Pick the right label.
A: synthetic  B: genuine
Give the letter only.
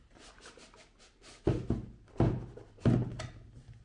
B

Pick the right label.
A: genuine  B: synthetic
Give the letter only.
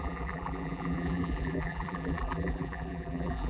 B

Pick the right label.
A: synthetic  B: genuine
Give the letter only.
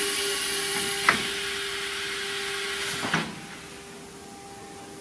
B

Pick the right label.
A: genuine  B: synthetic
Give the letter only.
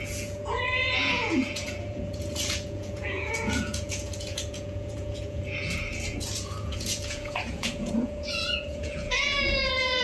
B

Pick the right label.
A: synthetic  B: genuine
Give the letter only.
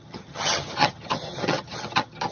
A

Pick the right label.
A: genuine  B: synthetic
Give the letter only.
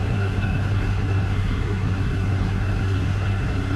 B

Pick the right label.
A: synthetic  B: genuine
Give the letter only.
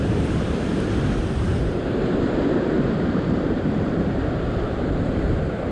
A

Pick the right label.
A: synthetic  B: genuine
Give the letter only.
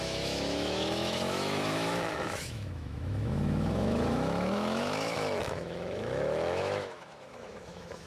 A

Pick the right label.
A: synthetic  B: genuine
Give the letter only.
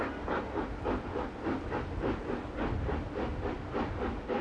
B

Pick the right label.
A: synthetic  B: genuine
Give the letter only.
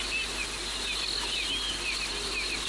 B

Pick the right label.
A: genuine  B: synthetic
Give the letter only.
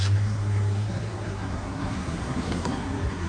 B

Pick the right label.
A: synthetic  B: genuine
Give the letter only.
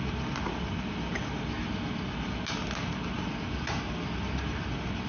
B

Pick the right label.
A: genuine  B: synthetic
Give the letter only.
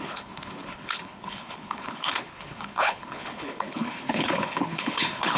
B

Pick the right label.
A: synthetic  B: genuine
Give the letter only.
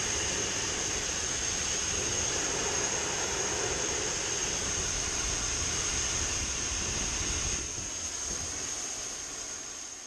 B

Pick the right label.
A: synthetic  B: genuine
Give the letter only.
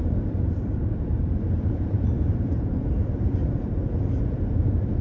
A